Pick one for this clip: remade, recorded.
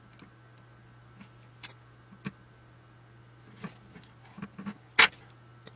recorded